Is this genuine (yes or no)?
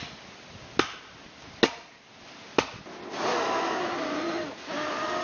yes